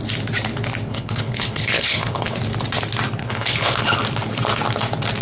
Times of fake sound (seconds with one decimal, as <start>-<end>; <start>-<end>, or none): 0.9-2.4; 3.2-3.8